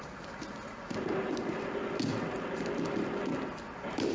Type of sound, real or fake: real